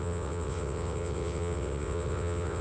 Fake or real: fake